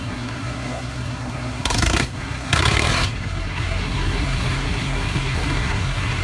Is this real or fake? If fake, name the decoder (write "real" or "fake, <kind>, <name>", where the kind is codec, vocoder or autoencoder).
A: fake, codec, SNAC